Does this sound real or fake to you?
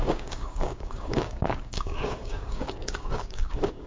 fake